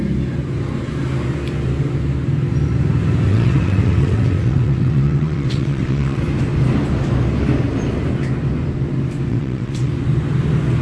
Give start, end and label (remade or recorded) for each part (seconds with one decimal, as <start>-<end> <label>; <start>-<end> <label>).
0.0-3.3 recorded; 3.3-6.2 remade; 6.2-9.3 recorded; 9.3-9.9 remade; 9.9-10.8 recorded